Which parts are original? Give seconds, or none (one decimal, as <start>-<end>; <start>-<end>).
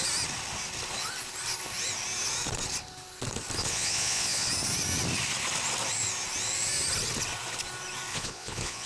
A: 0.0-3.6; 4.5-8.1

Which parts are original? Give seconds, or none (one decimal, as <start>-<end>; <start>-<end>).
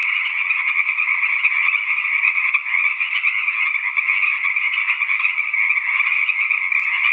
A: 2.5-4.3; 4.8-7.1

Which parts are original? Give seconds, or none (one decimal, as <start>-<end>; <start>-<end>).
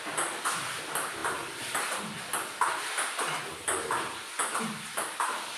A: 0.0-5.6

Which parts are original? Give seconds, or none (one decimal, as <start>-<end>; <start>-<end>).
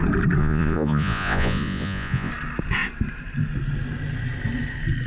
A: 0.0-0.4; 2.3-5.1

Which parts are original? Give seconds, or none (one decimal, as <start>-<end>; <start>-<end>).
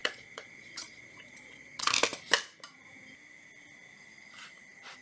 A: 1.9-5.0